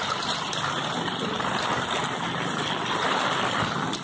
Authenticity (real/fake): real